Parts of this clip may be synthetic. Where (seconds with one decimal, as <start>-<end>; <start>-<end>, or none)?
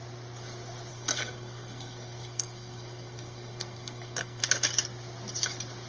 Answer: 0.9-4.4